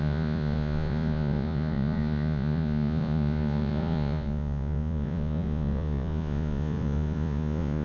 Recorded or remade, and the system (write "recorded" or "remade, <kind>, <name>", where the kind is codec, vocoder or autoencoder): remade, vocoder, Vocos